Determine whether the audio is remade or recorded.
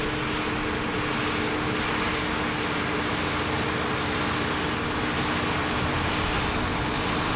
recorded